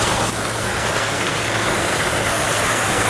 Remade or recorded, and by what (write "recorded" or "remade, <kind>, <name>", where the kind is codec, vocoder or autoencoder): remade, codec, SNAC